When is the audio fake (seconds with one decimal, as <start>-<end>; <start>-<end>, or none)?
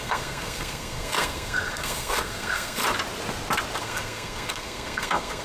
0.0-2.8; 3.8-5.4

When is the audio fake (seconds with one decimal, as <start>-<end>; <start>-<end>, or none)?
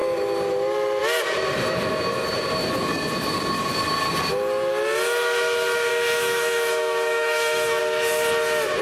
5.9-7.8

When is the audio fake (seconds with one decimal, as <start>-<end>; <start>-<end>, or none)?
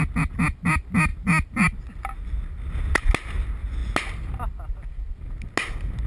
none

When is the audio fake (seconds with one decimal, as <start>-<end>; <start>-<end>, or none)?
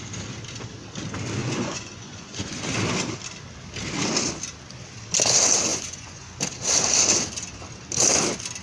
1.4-2.6; 5.7-6.4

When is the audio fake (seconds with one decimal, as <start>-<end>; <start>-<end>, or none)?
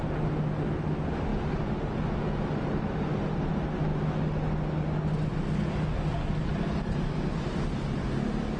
none